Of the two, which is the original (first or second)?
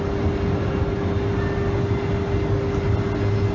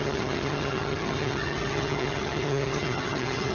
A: first